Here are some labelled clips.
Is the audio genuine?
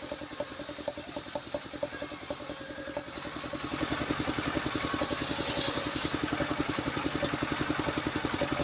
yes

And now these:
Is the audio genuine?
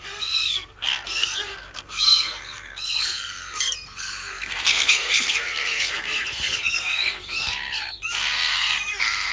no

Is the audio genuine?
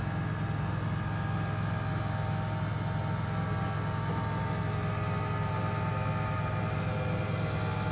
yes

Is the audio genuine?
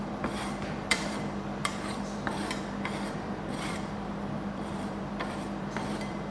no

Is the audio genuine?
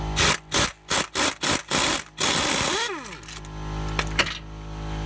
yes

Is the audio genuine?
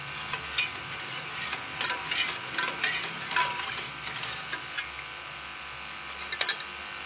yes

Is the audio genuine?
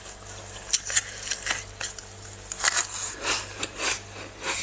yes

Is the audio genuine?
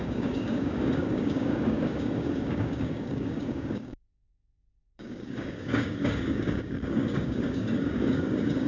no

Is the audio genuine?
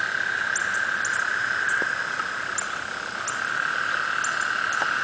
yes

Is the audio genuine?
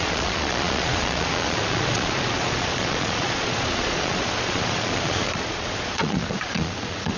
no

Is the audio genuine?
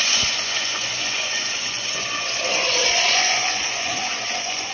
no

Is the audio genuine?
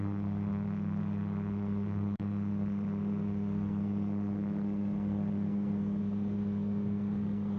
no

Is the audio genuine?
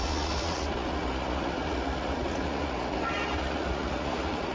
no